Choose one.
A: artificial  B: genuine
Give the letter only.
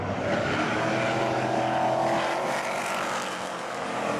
A